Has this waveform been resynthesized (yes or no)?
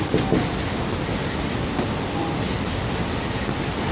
no